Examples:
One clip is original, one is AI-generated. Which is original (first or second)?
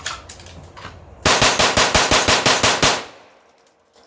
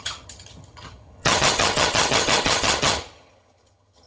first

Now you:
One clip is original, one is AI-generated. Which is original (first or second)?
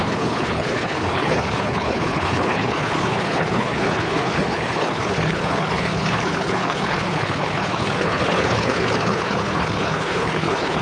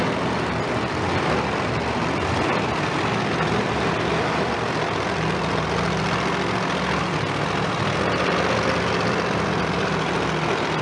second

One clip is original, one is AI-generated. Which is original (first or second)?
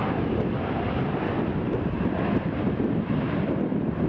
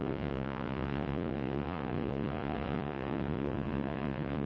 first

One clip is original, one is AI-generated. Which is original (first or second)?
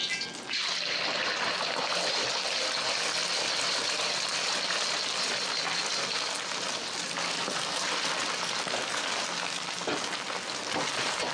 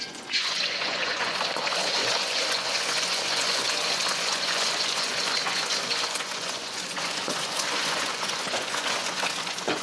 first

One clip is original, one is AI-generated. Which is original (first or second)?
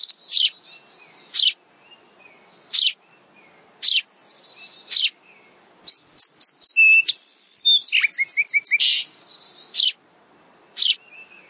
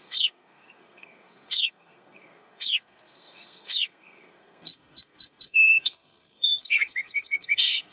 first